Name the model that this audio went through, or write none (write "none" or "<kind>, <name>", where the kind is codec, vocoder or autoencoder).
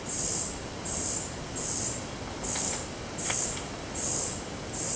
none